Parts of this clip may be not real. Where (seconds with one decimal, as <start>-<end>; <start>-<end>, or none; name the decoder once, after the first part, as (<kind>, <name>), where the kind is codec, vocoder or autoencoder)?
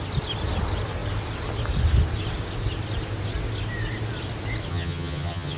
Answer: 4.7-5.6 (vocoder, HiFi-GAN)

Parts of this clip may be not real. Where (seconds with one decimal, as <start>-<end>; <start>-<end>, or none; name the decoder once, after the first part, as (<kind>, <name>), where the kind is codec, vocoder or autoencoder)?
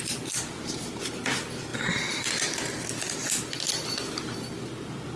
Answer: none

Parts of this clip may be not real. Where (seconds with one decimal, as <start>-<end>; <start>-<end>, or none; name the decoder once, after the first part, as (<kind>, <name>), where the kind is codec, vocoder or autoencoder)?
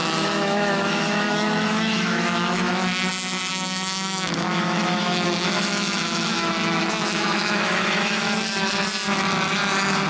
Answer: 0.0-3.1 (autoencoder, DAC-VAE); 3.5-8.7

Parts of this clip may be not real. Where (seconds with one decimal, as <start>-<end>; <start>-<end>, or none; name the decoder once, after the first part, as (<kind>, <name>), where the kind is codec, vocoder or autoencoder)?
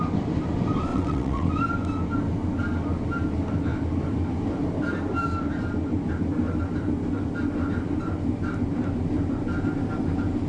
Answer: 0.9-1.5 (vocoder, WaveNeXt)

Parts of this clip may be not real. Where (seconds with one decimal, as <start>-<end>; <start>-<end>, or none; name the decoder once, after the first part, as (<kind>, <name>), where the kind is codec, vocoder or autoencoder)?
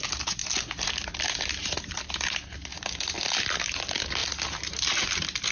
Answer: none